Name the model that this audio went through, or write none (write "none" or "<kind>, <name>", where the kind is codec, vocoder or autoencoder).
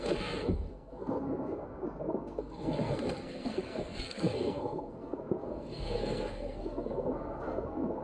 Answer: codec, SNAC